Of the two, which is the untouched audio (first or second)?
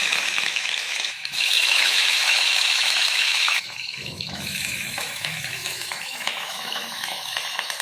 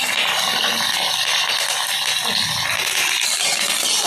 second